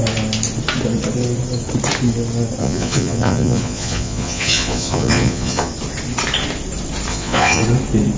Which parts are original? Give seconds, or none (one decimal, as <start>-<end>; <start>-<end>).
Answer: 0.0-2.6; 5.7-7.1; 7.6-8.2